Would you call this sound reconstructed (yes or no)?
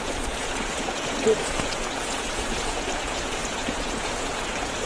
yes